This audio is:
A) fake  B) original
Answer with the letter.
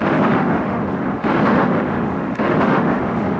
A